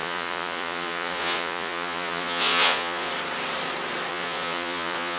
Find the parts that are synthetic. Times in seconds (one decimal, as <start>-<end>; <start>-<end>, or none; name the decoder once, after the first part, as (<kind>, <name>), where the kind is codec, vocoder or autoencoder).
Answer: 0.0-3.1 (vocoder, Vocos); 4.1-5.2